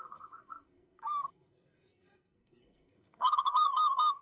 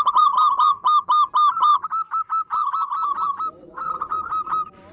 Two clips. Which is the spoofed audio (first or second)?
first